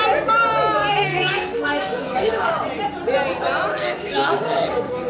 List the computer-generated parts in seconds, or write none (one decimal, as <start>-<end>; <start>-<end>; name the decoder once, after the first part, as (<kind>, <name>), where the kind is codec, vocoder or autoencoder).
0.9-2.5 (codec, SNAC); 3.7-5.1